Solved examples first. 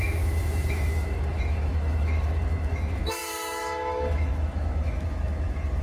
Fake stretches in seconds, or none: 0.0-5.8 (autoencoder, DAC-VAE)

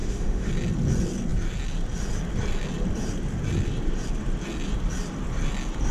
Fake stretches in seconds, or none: 0.0-0.5 (autoencoder, DAC-VAE)

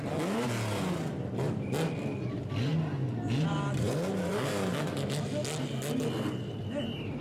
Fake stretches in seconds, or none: none

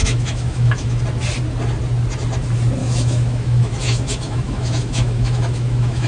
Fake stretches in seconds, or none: 0.0-1.0 (autoencoder, DAC-VAE); 2.8-6.1